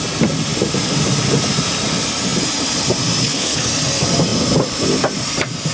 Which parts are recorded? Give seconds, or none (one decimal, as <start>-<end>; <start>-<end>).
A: 0.0-3.2; 3.7-5.7